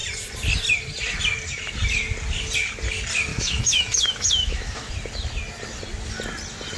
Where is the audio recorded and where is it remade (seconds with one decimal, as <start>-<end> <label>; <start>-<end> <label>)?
0.0-3.3 recorded; 3.3-4.9 remade; 4.9-6.8 recorded